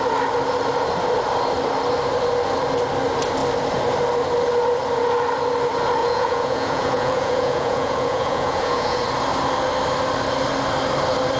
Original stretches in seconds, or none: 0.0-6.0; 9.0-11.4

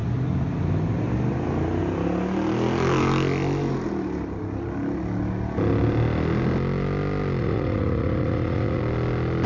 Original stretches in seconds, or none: 0.0-7.4; 8.8-9.5

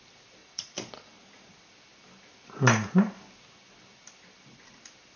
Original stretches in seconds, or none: 0.0-0.4; 1.1-5.2